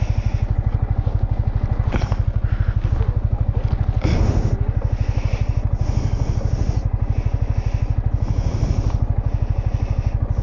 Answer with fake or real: real